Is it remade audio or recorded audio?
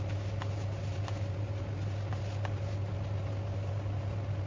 recorded